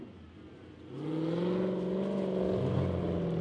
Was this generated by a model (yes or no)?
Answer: no